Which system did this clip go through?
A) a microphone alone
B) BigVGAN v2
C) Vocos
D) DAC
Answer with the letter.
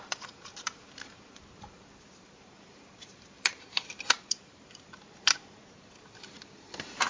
B